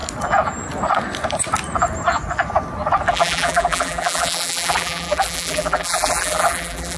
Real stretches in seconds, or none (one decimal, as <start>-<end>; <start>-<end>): 0.0-3.1